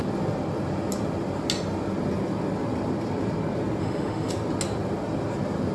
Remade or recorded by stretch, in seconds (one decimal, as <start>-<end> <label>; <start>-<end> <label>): 0.0-3.8 recorded; 3.8-4.3 remade; 4.3-5.7 recorded